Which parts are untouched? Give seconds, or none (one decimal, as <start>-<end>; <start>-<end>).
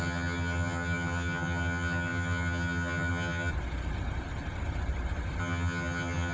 3.5-5.4